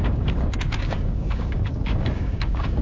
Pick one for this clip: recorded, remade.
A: remade